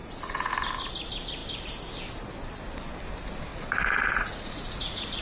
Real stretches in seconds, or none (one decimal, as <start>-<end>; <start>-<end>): 0.5-3.5